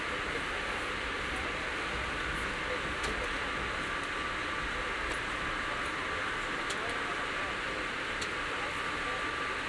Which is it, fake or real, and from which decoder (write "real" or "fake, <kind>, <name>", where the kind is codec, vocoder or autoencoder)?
real